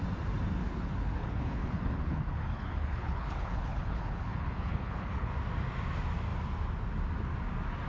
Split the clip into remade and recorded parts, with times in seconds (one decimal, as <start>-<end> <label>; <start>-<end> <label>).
0.0-0.6 recorded; 0.6-5.3 remade; 5.3-7.9 recorded